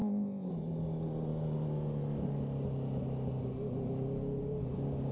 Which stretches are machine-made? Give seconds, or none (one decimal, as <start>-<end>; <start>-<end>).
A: 0.0-0.5

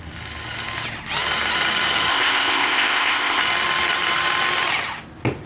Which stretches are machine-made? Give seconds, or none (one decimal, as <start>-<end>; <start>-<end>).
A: 2.1-3.4

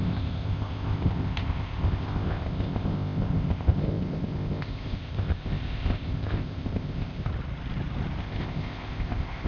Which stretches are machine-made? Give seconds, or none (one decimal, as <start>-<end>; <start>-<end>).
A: 0.0-7.3; 8.2-9.5

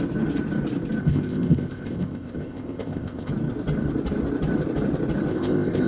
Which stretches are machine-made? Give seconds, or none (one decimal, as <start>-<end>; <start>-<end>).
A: 1.0-3.3; 5.3-5.9

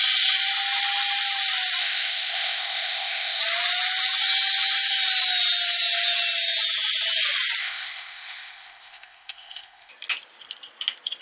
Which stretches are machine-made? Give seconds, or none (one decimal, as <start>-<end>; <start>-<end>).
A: 1.8-3.4; 7.6-9.9